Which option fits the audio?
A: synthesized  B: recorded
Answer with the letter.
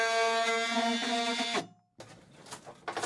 B